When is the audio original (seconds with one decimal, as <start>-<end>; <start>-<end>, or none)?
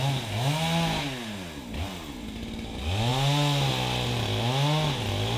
0.0-5.4